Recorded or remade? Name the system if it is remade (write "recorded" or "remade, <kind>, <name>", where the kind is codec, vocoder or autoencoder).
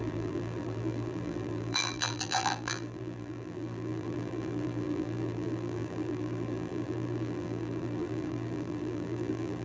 remade, vocoder, BigVGAN v2